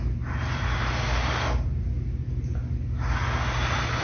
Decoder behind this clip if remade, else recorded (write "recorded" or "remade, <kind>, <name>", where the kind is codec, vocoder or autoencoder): recorded